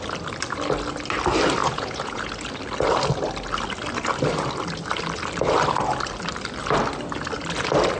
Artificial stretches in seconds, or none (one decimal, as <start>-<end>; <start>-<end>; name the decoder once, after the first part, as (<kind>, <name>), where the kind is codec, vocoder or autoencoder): 1.6-2.3 (vocoder, Vocos)